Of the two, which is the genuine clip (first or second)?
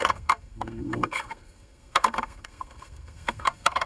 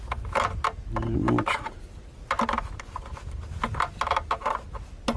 second